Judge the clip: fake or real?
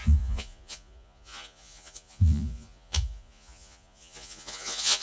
fake